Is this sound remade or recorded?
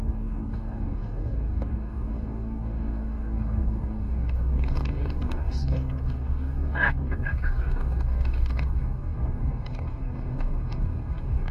remade